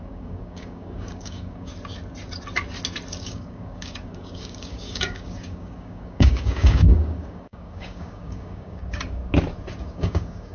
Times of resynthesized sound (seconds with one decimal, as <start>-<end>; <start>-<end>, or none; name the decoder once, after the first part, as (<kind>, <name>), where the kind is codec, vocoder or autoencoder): 0.0-1.7 (codec, DAC); 3.2-9.2; 9.8-10.5